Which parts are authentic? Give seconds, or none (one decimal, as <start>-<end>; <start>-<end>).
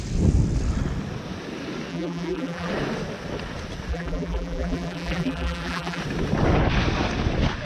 0.0-1.9; 2.7-3.9; 6.0-7.6